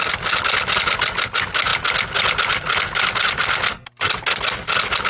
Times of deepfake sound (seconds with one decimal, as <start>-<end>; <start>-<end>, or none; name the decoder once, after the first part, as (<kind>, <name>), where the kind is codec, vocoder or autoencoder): none